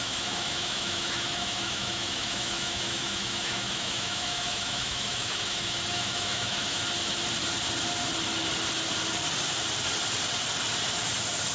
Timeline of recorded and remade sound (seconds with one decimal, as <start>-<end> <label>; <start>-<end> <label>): 0.0-6.8 remade; 6.8-11.5 recorded